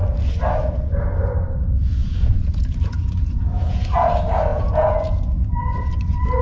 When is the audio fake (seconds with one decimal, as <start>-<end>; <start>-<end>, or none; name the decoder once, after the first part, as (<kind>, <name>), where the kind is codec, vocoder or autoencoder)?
2.0-3.8 (vocoder, Vocos); 4.5-5.9